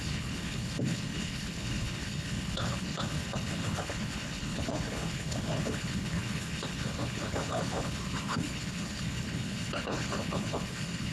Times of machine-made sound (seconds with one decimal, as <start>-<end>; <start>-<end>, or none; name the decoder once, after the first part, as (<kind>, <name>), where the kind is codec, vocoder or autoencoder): 0.0-11.1 (codec, HILCodec)